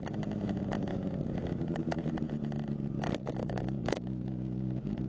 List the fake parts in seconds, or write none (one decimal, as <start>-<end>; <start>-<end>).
0.9-2.1; 3.4-5.1